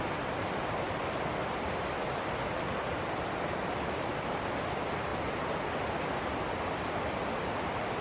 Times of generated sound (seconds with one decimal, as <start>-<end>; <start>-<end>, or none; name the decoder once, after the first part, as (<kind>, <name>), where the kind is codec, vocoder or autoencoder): none